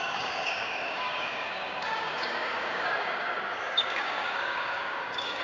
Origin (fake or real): fake